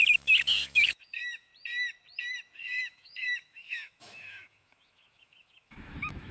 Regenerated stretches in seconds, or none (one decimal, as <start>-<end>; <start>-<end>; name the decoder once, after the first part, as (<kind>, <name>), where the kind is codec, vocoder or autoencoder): 0.0-1.5 (autoencoder, DAC-VAE); 2.6-6.3